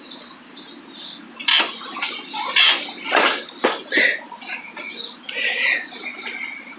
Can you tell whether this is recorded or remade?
recorded